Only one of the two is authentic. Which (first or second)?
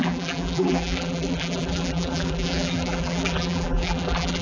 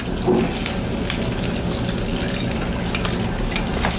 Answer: second